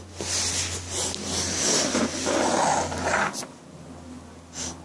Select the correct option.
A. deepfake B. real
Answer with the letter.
B